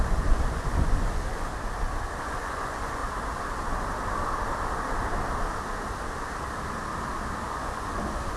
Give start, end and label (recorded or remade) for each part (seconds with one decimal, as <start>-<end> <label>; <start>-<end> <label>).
0.0-1.5 remade; 1.5-2.2 recorded; 2.2-3.0 remade; 3.0-7.5 recorded; 7.5-8.4 remade